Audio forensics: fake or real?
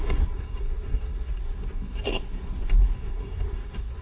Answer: fake